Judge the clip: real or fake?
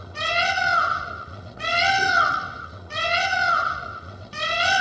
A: fake